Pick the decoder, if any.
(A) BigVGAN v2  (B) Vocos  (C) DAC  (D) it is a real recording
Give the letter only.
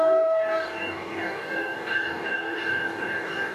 C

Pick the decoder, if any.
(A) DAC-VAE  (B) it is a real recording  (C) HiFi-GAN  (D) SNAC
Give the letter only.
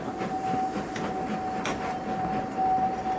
B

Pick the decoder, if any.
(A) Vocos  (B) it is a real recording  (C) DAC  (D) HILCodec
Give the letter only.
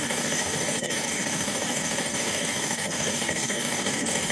C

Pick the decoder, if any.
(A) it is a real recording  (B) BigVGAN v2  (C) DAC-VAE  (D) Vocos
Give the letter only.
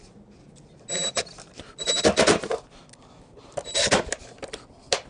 A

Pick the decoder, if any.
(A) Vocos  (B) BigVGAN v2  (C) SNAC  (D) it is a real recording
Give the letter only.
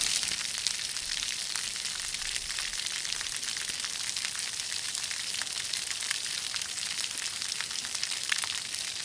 B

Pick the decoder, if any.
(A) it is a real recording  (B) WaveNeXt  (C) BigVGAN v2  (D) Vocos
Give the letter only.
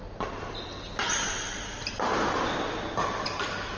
A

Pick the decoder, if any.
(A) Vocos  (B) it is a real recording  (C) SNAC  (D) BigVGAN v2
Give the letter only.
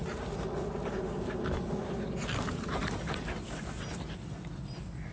B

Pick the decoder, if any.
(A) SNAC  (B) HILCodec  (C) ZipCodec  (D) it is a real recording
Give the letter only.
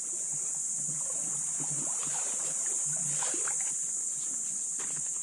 D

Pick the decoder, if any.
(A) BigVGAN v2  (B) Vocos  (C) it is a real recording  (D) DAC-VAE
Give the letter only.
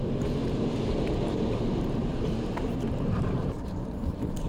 A